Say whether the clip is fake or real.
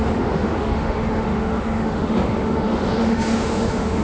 fake